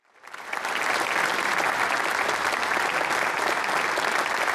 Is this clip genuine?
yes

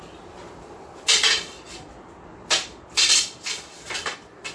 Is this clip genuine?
yes